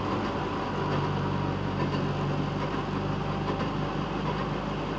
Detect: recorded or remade recorded